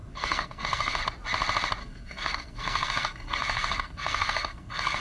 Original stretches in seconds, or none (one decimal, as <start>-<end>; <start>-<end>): 1.0-1.8